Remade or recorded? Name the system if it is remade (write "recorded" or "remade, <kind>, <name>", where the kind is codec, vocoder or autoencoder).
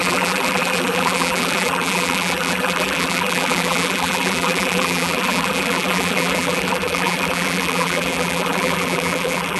remade, vocoder, BigVGAN v2